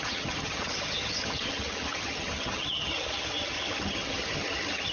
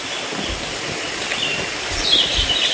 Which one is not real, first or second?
first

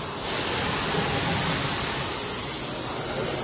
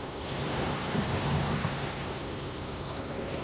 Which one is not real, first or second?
second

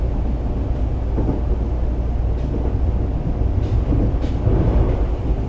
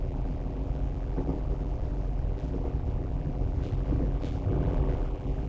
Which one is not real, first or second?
second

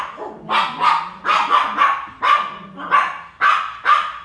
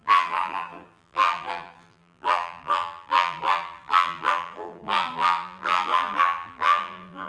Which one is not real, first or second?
second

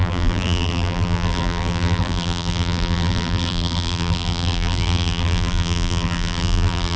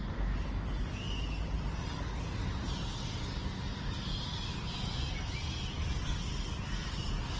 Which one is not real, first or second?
first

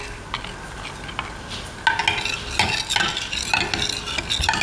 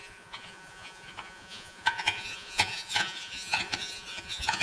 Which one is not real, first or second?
second